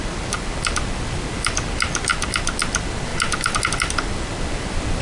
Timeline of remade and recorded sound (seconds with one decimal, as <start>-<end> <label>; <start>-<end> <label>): 0.0-5.0 recorded